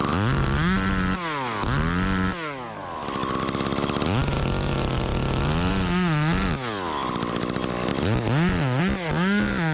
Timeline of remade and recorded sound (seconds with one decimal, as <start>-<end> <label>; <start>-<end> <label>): 0.0-9.7 recorded